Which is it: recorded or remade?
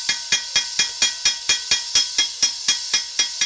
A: recorded